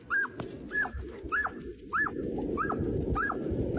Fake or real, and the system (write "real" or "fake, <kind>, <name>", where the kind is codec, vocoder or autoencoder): real